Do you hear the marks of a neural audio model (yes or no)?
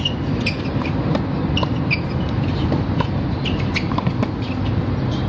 no